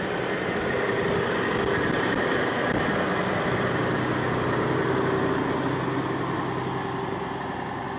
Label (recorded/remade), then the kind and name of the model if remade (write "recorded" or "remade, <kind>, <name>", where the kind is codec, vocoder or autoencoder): recorded